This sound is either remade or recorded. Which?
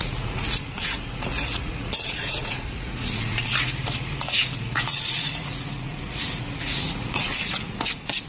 remade